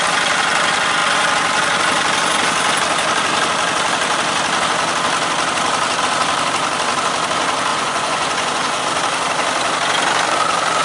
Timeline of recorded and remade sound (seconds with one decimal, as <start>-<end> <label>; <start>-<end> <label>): 0.0-7.7 recorded; 7.7-8.8 remade; 8.8-10.8 recorded